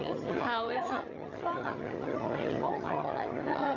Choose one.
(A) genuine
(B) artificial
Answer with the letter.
B